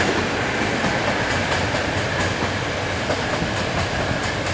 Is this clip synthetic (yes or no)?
no